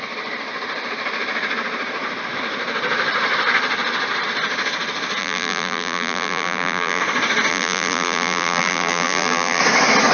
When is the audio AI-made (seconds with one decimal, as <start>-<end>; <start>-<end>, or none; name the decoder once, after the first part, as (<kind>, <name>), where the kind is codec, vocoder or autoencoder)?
5.2-7.0 (vocoder, BigVGAN v2); 7.5-9.6